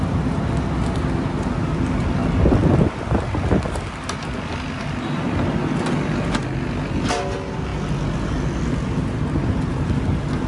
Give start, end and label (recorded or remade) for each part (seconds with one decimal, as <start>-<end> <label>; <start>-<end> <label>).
0.0-10.5 recorded